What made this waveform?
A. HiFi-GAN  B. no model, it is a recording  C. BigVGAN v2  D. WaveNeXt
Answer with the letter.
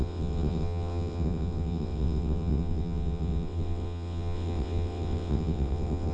D